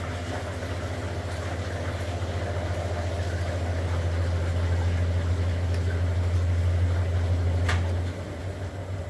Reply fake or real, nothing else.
real